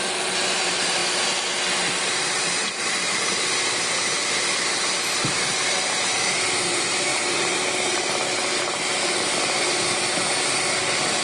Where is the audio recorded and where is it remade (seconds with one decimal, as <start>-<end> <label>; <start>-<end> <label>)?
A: 0.0-11.2 recorded